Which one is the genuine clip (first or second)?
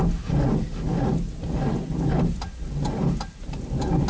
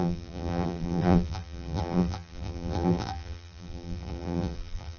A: first